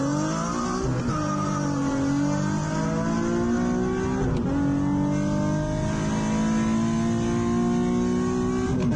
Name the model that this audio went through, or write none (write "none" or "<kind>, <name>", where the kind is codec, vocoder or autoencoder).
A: none